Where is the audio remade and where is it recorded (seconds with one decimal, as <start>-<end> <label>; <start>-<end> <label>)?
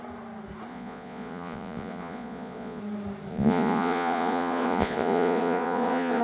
0.0-0.7 recorded; 0.7-2.8 remade; 2.8-3.3 recorded; 3.3-6.2 remade